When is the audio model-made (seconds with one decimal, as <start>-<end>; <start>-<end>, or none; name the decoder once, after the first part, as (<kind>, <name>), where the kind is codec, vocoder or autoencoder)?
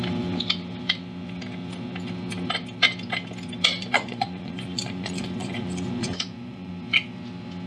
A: 3.8-6.7 (vocoder, Vocos)